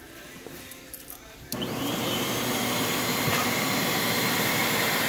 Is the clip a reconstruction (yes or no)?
yes